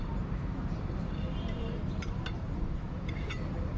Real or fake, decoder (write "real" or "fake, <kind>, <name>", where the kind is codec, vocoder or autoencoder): fake, vocoder, BigVGAN v2